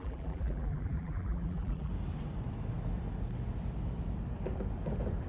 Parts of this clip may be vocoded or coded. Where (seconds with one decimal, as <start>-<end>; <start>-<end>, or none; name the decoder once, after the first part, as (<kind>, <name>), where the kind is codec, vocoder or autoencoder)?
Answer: 0.0-1.9 (vocoder, BigVGAN v2)